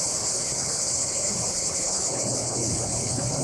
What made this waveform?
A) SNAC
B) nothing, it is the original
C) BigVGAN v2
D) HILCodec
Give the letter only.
D